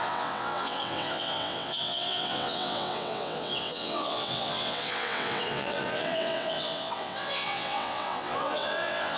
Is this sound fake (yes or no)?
yes